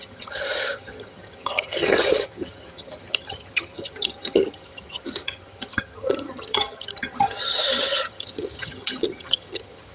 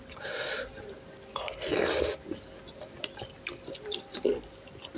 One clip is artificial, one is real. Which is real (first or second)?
second